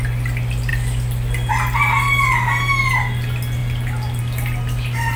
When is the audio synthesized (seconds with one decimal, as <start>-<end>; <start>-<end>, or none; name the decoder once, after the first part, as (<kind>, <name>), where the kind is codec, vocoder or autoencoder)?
none